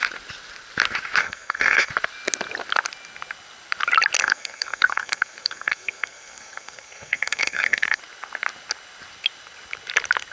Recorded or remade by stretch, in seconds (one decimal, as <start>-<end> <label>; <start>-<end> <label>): 0.0-1.2 recorded; 1.2-1.9 remade; 1.9-4.2 recorded; 4.2-8.0 remade; 8.0-10.3 recorded